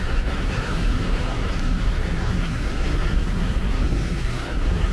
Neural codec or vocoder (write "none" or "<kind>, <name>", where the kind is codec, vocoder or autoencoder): codec, SNAC